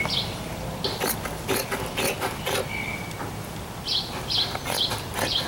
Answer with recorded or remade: recorded